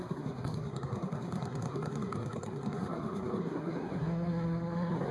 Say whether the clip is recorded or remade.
remade